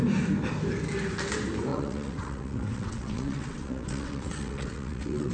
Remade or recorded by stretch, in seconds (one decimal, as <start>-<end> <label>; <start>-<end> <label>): 0.0-1.7 recorded; 1.7-5.3 remade